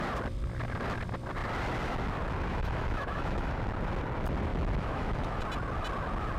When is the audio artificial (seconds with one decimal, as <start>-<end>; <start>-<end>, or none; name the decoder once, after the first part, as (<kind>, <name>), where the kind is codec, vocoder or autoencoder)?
2.5-3.6 (autoencoder, DAC-VAE); 4.5-5.4